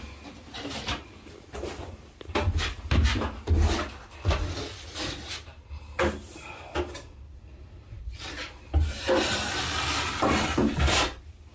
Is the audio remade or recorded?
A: recorded